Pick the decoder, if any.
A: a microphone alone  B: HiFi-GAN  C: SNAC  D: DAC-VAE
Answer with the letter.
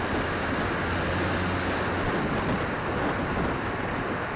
A